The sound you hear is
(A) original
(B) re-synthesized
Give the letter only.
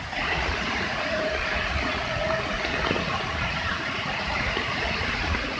B